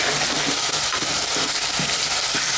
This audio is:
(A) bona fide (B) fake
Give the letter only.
A